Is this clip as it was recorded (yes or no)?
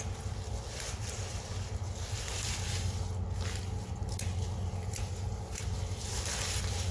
yes